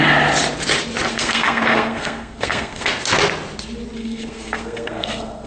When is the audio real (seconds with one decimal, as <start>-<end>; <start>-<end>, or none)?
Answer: 0.0-1.1; 2.9-4.0

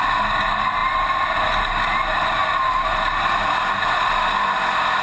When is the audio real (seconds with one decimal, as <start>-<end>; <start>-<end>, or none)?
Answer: 0.0-5.0

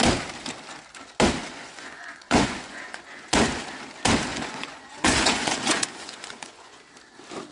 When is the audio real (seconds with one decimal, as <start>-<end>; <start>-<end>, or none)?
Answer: 0.0-1.4; 3.6-4.3; 6.8-7.5

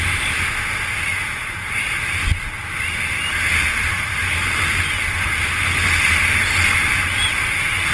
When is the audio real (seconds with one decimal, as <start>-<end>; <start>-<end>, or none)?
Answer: 0.0-1.1; 1.7-7.9

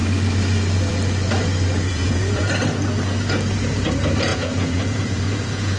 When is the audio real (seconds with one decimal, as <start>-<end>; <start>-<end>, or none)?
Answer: 0.0-1.9; 2.5-4.3

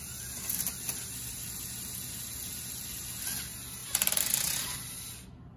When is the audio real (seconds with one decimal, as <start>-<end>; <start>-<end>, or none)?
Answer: 0.0-5.6

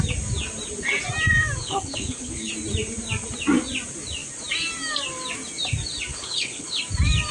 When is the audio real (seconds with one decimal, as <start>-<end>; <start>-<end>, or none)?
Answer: 0.0-1.6; 2.5-6.1; 6.8-7.3

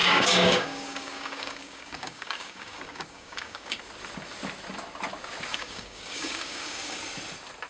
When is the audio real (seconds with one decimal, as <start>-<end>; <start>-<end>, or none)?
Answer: 3.8-5.5; 7.0-7.7